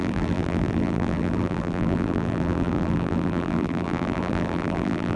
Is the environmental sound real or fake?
fake